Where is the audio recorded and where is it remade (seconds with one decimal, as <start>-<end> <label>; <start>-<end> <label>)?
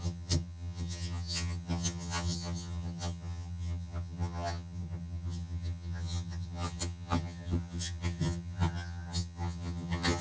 0.0-10.2 remade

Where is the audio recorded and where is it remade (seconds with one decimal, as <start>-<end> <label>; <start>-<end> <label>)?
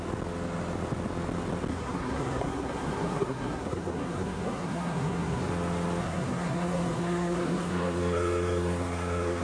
0.0-1.7 recorded; 1.7-5.5 remade; 5.5-6.0 recorded; 6.0-9.4 remade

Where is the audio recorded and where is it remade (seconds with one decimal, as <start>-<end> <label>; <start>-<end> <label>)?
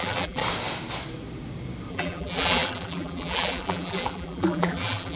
0.0-0.4 remade; 0.4-1.9 recorded; 1.9-5.2 remade